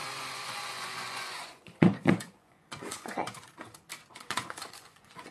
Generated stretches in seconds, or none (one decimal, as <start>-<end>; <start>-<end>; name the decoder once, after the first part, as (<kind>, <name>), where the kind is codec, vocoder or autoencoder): 0.0-3.5 (vocoder, Vocos); 4.1-5.3